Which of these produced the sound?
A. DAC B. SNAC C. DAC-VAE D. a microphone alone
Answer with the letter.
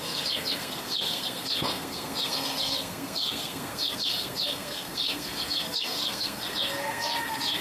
B